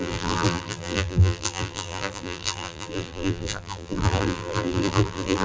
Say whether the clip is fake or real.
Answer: fake